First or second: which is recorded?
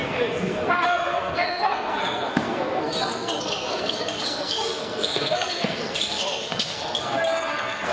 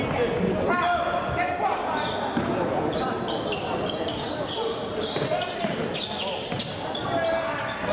second